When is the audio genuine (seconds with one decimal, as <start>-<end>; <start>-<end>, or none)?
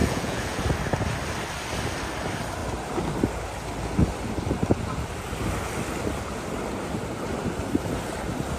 0.6-8.6